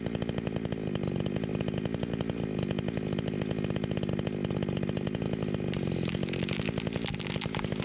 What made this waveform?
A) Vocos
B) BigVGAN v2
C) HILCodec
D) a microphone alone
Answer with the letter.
D